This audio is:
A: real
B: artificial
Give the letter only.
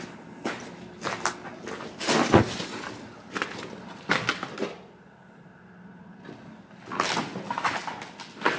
A